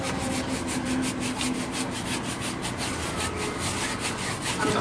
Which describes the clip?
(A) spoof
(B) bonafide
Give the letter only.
B